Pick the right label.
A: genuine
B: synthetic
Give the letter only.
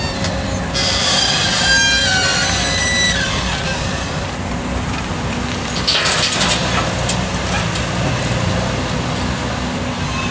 A